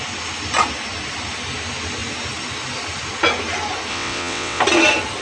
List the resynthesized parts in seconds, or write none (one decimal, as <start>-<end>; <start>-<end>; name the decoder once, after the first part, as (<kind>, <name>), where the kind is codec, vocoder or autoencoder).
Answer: 3.9-4.6 (vocoder, WaveNeXt)